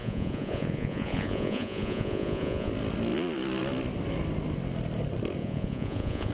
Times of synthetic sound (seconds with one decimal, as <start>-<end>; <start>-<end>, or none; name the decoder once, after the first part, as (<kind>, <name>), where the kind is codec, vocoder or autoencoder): 0.0-2.7 (vocoder, Vocos); 5.4-6.3